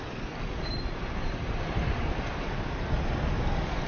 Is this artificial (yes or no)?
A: no